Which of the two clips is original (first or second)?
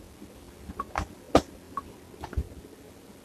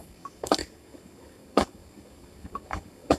first